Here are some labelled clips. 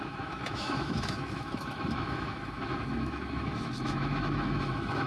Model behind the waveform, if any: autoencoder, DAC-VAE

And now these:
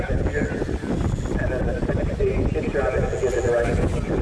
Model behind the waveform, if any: none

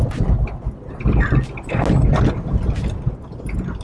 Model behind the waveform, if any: none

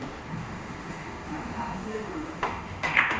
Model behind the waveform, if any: autoencoder, DAC-VAE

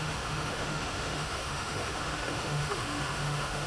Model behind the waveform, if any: autoencoder, DAC-VAE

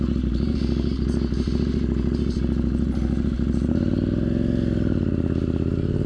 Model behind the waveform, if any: none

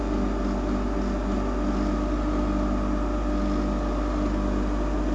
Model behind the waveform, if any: none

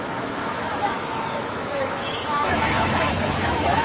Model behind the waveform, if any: autoencoder, DAC-VAE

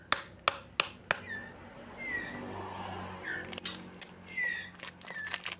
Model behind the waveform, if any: none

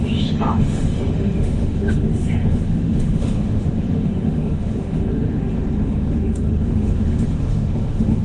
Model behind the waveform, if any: autoencoder, DAC-VAE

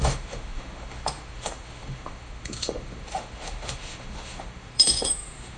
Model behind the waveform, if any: autoencoder, DAC-VAE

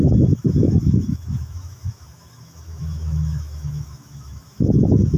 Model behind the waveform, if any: autoencoder, DAC-VAE